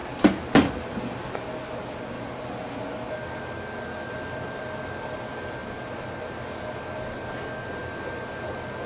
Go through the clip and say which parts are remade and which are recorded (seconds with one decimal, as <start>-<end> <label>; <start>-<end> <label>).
0.0-8.9 recorded